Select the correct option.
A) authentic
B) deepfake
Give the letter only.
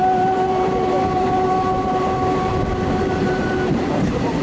B